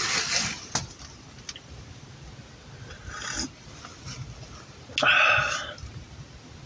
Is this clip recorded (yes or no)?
yes